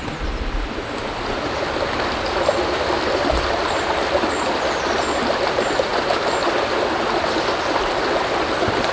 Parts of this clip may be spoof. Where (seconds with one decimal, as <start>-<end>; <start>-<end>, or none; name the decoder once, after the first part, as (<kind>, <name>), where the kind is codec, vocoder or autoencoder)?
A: none